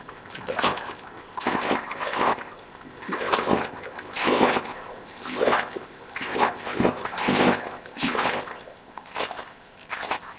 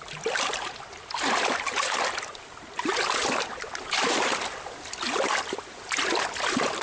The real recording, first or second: second